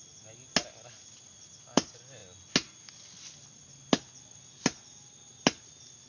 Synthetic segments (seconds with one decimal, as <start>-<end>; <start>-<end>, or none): none